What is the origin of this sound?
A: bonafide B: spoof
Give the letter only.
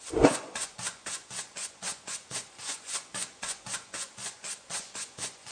B